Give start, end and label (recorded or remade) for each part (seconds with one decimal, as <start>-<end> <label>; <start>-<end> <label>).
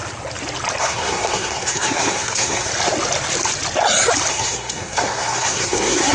0.0-0.8 recorded; 0.8-2.7 remade; 2.7-4.3 recorded; 4.3-6.1 remade